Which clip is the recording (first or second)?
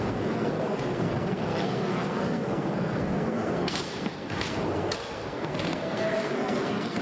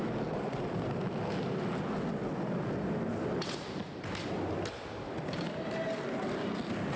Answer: second